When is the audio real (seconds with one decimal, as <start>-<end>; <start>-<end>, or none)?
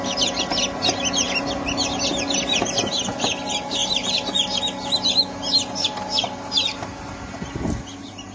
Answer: 0.0-8.3